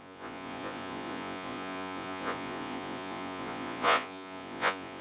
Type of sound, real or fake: fake